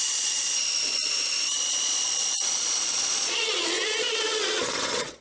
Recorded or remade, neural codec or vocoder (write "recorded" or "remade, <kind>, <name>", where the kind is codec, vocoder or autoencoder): remade, vocoder, Vocos